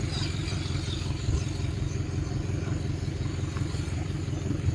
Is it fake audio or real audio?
fake